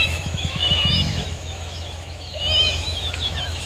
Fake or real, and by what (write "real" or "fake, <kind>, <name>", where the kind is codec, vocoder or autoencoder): fake, autoencoder, DAC-VAE